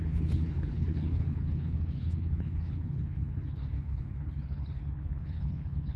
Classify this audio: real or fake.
fake